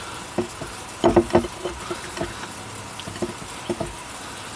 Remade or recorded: recorded